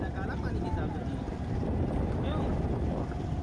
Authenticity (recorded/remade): remade